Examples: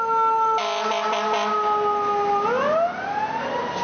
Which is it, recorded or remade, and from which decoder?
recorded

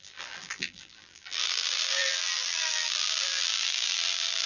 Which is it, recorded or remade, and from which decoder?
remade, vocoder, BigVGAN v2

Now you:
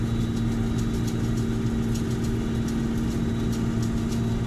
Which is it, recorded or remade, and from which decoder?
recorded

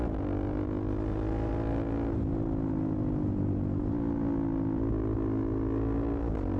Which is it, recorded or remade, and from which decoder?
recorded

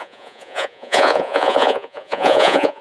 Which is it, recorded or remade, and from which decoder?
remade, vocoder, Vocos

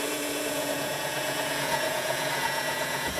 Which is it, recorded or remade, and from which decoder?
remade, vocoder, Vocos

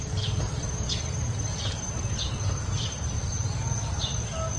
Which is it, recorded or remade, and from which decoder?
recorded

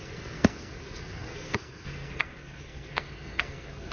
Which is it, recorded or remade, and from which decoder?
remade, codec, SNAC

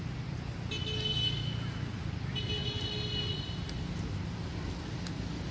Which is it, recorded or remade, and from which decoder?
recorded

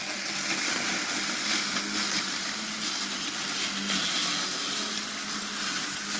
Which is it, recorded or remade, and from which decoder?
recorded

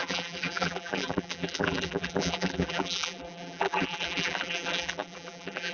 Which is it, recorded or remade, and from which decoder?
remade, vocoder, BigVGAN v2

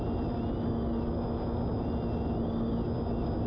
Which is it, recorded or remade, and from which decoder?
recorded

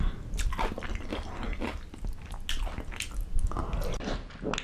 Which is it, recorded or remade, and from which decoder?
recorded